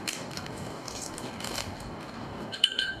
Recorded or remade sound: remade